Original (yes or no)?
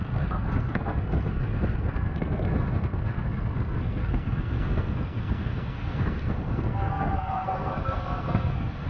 no